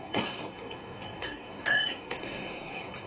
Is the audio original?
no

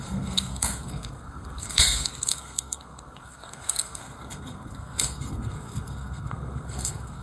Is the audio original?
no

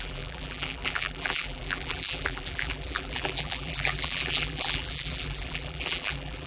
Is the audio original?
no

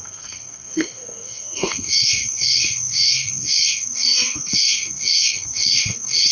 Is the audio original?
no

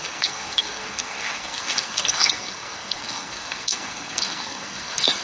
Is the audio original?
no